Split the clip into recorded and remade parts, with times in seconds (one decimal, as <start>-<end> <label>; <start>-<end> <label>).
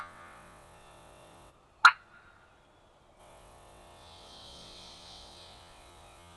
0.0-1.5 remade; 1.5-3.2 recorded; 3.2-6.4 remade